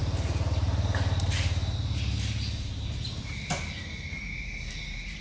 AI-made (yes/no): no